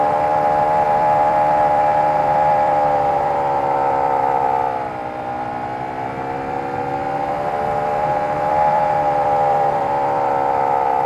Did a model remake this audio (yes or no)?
yes